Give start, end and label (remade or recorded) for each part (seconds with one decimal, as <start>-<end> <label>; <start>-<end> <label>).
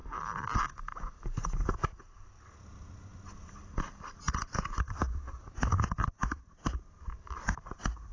0.0-8.1 recorded